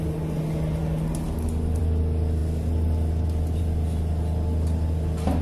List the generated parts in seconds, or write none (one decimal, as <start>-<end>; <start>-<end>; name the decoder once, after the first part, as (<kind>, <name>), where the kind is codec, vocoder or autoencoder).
none